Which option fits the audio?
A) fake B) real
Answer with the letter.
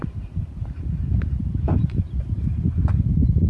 A